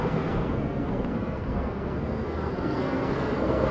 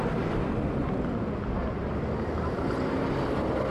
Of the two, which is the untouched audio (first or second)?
second